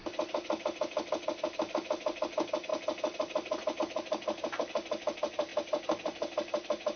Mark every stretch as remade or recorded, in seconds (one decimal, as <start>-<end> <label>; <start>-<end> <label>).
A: 0.0-7.0 recorded